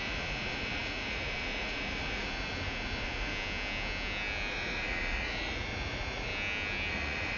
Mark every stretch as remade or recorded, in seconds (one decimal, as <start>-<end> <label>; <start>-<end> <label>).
0.0-3.3 remade; 3.3-4.5 recorded; 4.5-6.3 remade; 6.3-6.9 recorded; 6.9-7.4 remade